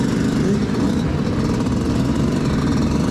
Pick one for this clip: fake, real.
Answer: fake